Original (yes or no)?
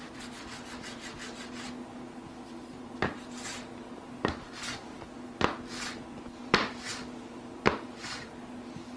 yes